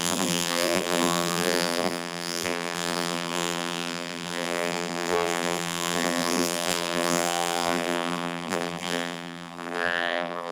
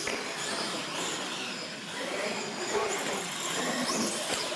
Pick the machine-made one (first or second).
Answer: first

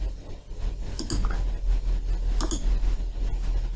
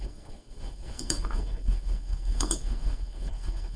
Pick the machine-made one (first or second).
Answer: second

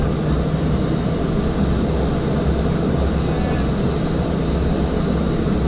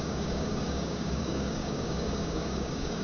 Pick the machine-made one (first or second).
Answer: second